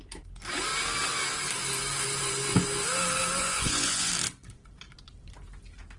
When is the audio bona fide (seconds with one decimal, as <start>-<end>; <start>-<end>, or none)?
0.0-3.4; 4.1-6.0